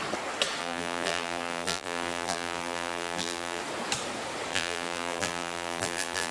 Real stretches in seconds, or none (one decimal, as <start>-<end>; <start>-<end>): 0.0-0.6; 3.6-4.5